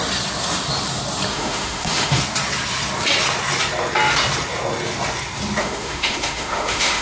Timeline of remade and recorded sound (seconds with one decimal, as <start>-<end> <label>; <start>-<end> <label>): 0.0-1.3 recorded; 1.3-2.2 remade; 2.2-5.6 recorded; 5.6-7.0 remade